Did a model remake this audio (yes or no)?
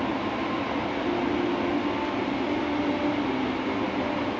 no